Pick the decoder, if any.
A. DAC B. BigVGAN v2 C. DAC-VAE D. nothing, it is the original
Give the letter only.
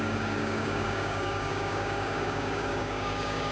A